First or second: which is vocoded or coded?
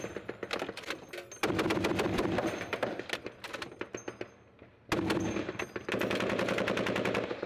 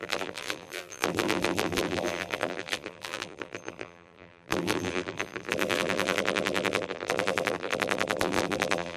second